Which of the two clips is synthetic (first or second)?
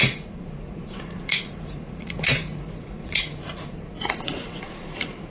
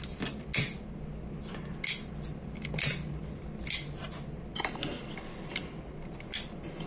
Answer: first